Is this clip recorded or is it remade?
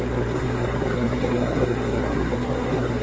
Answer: remade